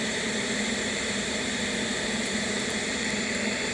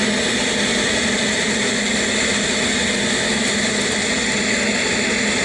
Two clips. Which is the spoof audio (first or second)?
first